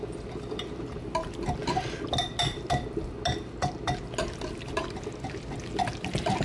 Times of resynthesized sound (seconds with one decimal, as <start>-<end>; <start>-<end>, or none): none